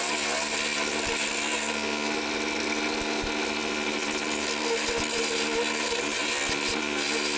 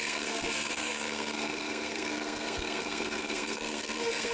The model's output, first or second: second